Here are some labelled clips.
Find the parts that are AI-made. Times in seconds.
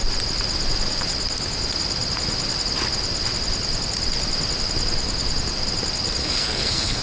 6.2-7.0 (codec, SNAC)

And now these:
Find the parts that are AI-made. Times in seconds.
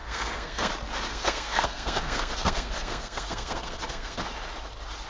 0.0-0.7 (codec, SNAC); 1.1-4.2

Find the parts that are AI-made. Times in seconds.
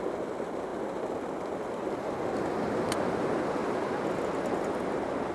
none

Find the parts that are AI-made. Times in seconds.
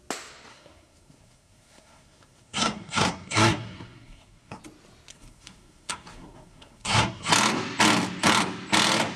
0.5-4.6 (codec, SNAC); 5.1-7.3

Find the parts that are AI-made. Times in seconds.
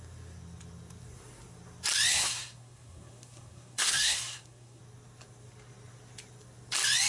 2.1-4.8 (codec, SNAC)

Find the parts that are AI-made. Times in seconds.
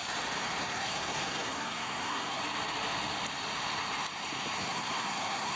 0.6-2.4 (codec, SNAC); 4.6-5.6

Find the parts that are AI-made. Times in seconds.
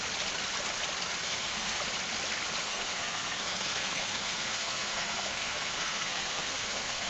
1.2-1.8 (codec, SNAC); 2.6-7.1